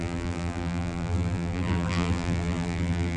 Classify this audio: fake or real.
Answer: fake